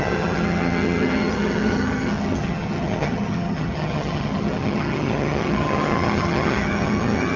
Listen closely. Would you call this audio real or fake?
fake